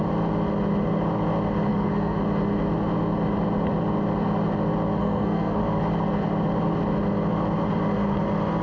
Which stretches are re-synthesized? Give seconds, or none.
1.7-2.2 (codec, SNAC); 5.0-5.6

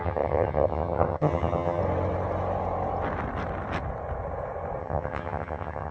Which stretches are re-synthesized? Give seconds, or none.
0.0-1.8 (vocoder, HiFi-GAN); 4.8-5.9

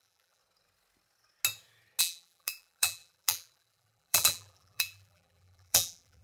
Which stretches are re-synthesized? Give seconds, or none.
0.0-0.4 (vocoder, BigVGAN v2); 2.0-6.2